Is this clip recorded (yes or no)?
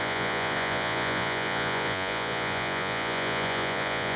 no